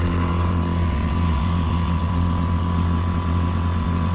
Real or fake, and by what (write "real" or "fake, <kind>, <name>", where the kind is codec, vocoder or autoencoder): fake, vocoder, WaveNeXt